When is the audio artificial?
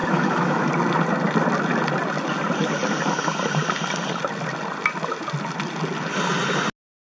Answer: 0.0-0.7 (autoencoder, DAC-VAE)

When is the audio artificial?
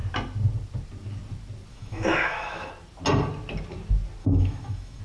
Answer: 1.7-2.7 (autoencoder, DAC-VAE); 4.2-5.0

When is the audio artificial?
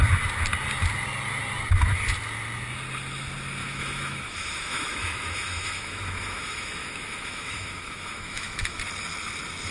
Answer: 3.6-8.8 (autoencoder, DAC-VAE)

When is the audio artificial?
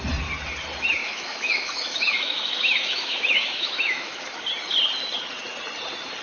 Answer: 1.0-4.4 (autoencoder, DAC-VAE)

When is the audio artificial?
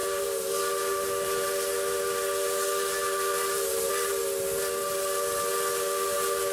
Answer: none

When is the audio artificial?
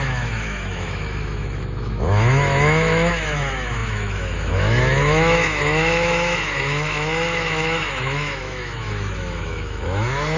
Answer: 0.0-10.4 (autoencoder, DAC-VAE)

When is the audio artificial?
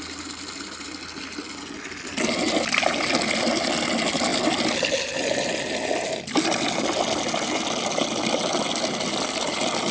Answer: none